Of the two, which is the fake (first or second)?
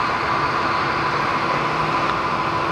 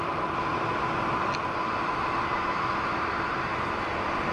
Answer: second